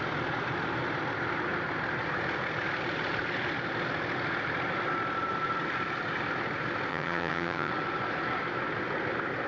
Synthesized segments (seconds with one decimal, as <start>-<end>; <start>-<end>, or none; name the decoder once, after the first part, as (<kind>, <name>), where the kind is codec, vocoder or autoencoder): 6.9-7.7 (vocoder, HiFi-GAN)